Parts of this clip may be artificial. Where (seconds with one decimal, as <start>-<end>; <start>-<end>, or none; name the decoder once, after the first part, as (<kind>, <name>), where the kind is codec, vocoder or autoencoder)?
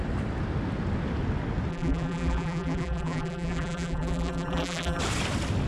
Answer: 1.7-5.0 (vocoder, BigVGAN v2)